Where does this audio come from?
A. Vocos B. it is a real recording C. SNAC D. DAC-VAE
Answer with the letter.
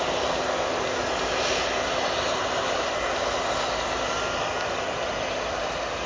B